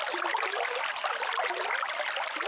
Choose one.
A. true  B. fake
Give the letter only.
A